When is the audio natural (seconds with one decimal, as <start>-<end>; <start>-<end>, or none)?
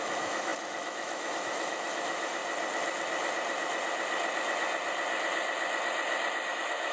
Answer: 2.4-6.5